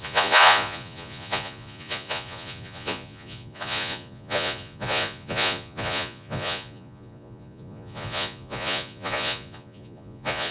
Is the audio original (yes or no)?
no